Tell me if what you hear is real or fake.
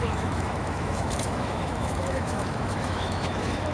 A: fake